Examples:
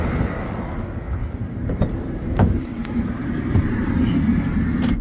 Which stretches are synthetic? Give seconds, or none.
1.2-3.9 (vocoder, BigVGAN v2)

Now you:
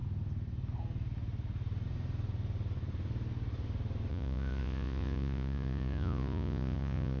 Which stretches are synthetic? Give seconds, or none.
4.1-7.2 (vocoder, Vocos)

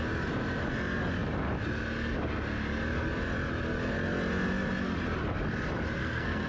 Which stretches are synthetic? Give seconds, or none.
6.0-6.5 (codec, SNAC)

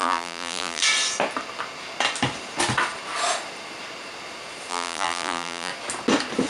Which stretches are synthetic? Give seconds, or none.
0.0-0.8 (vocoder, BigVGAN v2); 4.7-5.7

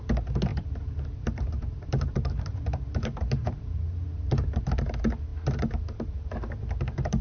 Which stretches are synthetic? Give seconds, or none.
0.5-4.8 (vocoder, BigVGAN v2); 5.3-6.6

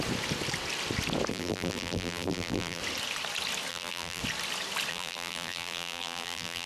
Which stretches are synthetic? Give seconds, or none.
1.3-2.8 (vocoder, BigVGAN v2); 3.7-4.2; 4.9-6.7